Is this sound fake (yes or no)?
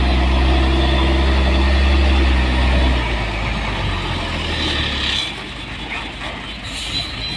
no